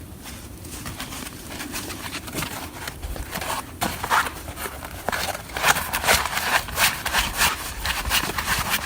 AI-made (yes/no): yes